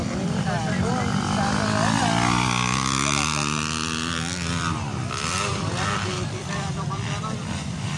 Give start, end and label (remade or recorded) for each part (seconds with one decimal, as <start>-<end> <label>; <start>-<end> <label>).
0.0-5.5 recorded; 5.5-8.0 remade